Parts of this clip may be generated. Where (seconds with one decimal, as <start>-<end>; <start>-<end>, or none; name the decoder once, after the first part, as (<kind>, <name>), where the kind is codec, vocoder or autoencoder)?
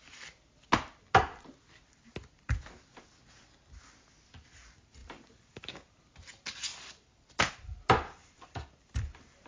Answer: none